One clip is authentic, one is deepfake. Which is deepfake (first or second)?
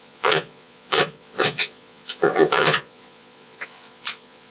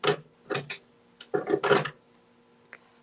first